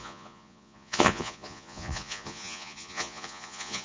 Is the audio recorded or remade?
remade